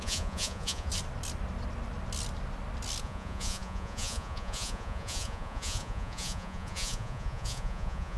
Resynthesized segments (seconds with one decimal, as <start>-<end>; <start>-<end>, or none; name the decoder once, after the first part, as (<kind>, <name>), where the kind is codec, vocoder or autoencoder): 0.0-0.9 (vocoder, Vocos); 3.0-8.2